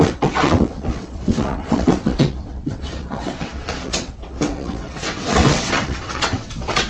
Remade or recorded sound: remade